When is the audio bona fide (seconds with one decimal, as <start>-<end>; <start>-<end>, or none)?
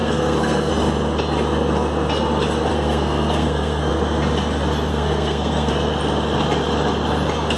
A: 0.7-2.7; 3.9-4.9; 5.7-7.6